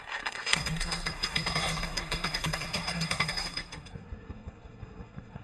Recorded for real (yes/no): no